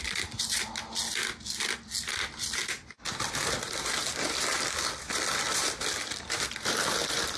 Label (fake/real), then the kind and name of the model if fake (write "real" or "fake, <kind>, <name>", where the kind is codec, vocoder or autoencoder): real